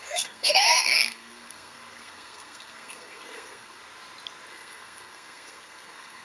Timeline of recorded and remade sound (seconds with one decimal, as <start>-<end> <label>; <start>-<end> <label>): 0.0-3.8 remade; 3.8-4.5 recorded; 4.5-6.2 remade